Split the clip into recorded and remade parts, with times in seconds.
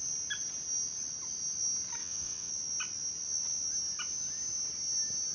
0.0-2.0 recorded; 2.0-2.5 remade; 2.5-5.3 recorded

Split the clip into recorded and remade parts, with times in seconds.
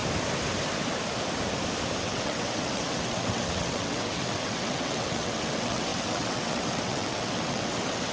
0.0-2.0 recorded; 2.0-8.1 remade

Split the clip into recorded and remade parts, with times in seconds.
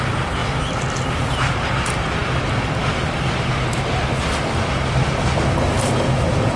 0.0-6.6 recorded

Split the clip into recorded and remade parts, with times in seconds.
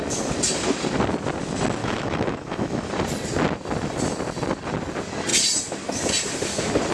0.0-1.8 recorded; 1.8-2.9 remade; 2.9-6.9 recorded